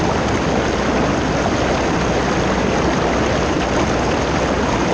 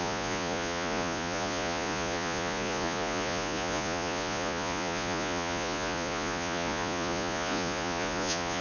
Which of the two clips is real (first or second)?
first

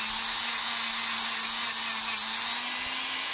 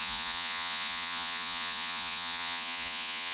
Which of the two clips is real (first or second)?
first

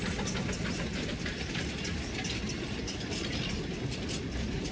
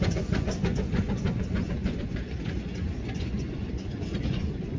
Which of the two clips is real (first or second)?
first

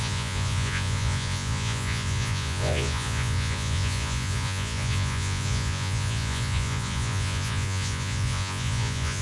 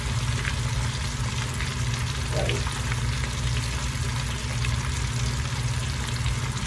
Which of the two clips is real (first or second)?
second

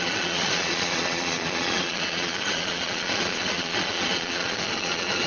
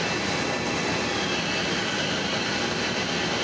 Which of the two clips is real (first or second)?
second